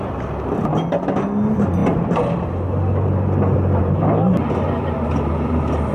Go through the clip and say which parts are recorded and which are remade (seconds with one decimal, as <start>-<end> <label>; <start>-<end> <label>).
0.0-5.9 recorded